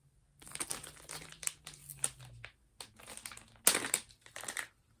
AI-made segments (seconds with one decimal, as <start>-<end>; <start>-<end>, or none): none